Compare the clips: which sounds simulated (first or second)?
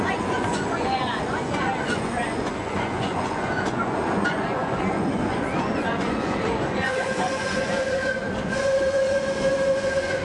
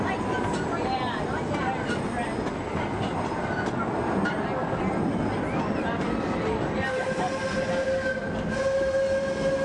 first